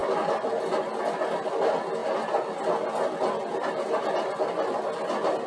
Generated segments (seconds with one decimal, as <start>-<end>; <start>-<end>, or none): 0.0-0.6